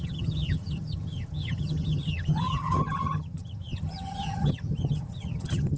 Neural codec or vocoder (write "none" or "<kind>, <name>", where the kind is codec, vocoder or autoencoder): vocoder, HiFi-GAN